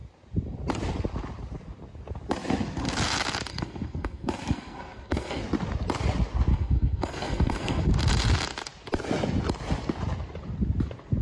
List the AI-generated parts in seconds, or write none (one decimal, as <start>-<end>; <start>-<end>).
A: 3.5-5.4; 6.5-7.9